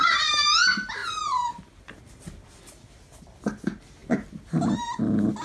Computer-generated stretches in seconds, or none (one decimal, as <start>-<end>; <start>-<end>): none